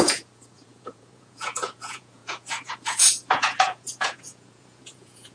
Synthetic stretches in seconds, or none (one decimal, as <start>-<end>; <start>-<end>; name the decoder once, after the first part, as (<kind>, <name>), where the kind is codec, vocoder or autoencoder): 0.0-5.3 (vocoder, Vocos)